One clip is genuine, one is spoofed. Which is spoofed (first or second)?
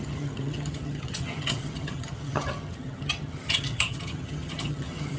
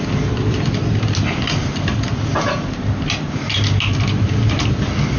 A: first